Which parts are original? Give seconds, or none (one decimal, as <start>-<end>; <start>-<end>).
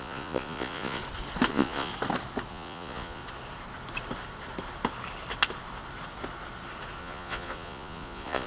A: 1.0-1.5; 1.9-2.5; 3.2-7.0